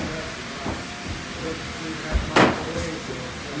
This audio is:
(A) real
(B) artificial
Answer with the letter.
A